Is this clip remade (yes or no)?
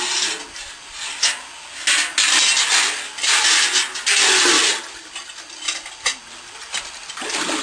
no